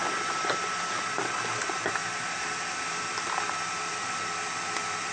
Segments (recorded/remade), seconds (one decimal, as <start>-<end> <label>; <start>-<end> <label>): 0.0-5.1 remade